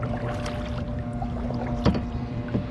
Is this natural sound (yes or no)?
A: no